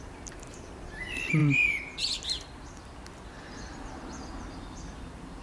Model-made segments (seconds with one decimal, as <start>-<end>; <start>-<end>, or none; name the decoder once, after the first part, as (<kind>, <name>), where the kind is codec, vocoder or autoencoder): none